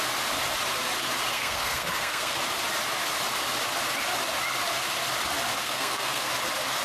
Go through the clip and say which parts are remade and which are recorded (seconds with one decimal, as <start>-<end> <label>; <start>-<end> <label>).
0.0-1.3 recorded; 1.3-2.4 remade; 2.4-5.6 recorded; 5.6-6.3 remade; 6.3-6.8 recorded